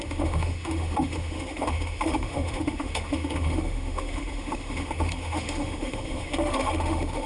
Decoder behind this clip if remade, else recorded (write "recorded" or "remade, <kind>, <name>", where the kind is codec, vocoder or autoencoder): remade, autoencoder, DAC-VAE